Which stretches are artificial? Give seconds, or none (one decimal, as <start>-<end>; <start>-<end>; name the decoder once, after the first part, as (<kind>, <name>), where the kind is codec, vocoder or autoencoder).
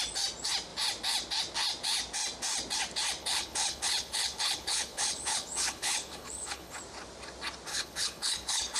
3.2-6.8 (codec, HILCodec); 7.7-8.8